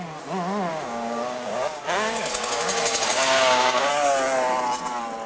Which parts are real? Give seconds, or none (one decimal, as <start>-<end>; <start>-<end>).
0.0-0.7; 3.9-5.3